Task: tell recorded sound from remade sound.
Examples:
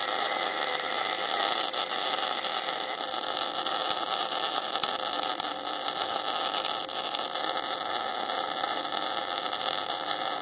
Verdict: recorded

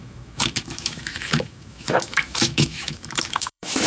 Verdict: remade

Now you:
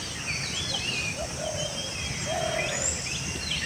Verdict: recorded